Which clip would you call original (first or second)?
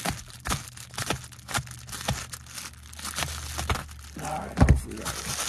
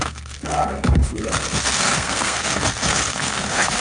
first